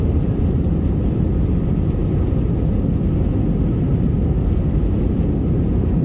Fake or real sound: real